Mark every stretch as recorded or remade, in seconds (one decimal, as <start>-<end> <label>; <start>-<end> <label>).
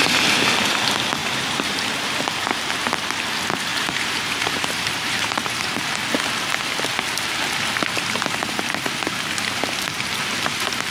0.0-1.2 recorded; 1.2-2.1 remade; 2.1-3.7 recorded; 3.7-5.8 remade; 5.8-10.9 recorded